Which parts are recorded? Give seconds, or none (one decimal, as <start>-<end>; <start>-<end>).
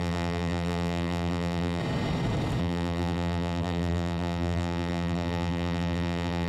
1.8-2.6